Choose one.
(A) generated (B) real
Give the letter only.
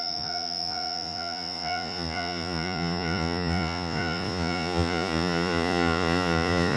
A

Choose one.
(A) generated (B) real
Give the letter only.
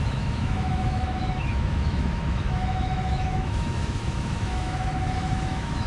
A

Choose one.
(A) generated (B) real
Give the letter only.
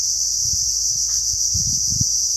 A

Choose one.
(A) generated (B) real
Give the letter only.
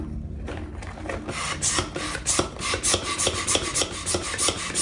B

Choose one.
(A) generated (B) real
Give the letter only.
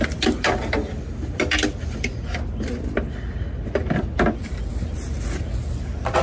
B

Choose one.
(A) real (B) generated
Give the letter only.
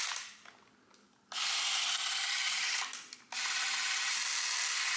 A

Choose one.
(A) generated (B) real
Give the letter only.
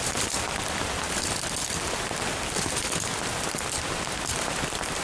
B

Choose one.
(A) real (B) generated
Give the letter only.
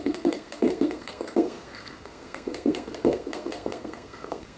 B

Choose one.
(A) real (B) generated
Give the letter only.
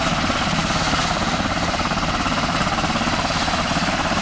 B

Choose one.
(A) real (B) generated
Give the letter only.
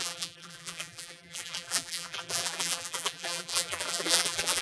B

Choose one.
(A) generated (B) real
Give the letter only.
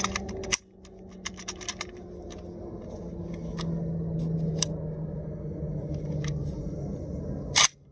B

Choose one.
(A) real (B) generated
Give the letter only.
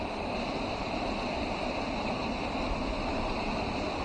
A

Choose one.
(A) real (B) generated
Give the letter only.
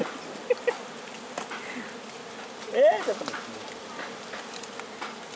A